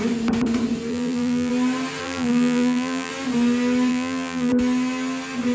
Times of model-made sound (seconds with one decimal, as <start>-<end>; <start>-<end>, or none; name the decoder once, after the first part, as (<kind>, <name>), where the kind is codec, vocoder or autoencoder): 0.9-1.5 (vocoder, BigVGAN v2); 2.0-3.1; 3.9-4.5